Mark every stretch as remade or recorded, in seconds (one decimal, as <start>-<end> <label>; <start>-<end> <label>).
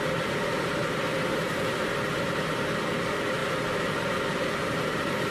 0.0-0.8 recorded; 0.8-1.9 remade; 1.9-3.4 recorded; 3.4-5.3 remade